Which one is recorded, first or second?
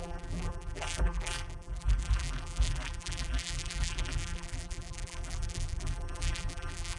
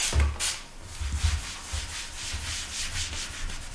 second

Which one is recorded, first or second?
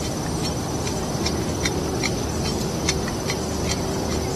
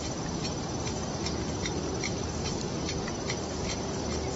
first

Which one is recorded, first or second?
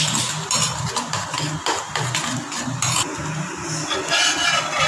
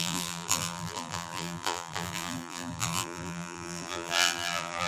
first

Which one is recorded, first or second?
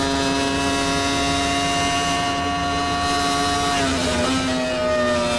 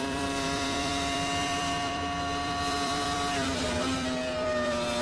first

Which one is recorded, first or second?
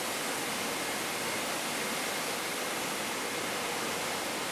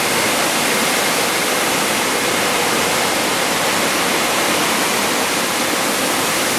first